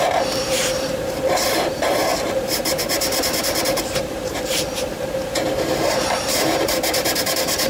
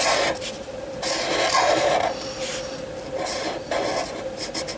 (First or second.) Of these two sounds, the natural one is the second